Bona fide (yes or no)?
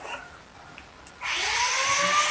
yes